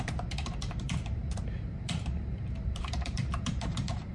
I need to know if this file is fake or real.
fake